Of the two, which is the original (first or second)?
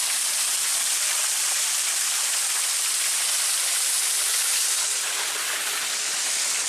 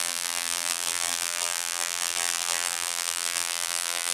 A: first